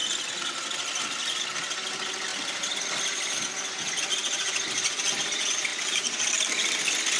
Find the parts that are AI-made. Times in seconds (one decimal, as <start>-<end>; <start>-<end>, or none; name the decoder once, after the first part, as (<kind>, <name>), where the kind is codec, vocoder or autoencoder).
5.7-6.5 (vocoder, BigVGAN v2)